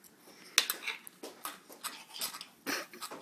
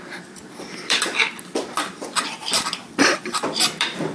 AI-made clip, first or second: second